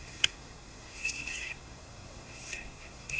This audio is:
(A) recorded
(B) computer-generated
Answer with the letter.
B